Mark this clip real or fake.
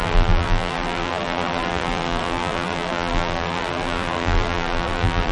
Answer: fake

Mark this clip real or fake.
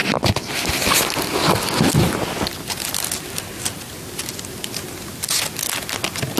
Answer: real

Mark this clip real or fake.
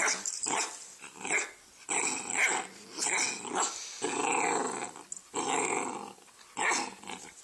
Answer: real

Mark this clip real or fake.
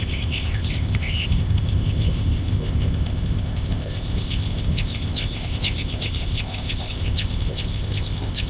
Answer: fake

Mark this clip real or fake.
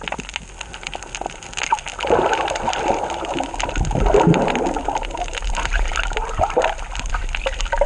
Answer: real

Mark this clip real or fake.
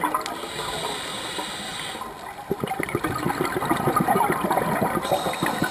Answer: real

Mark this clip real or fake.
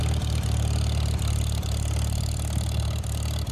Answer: real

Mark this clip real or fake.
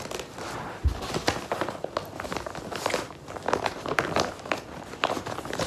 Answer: real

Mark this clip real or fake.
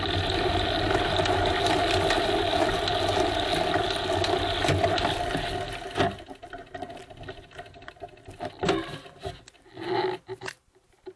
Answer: real